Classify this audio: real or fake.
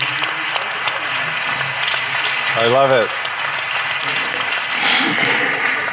real